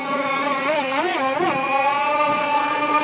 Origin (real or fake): fake